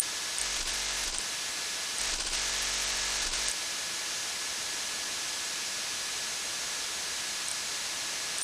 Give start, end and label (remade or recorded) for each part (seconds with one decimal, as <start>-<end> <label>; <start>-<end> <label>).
0.0-0.4 recorded; 0.4-1.2 remade; 1.2-2.0 recorded; 2.0-3.5 remade; 3.5-8.4 recorded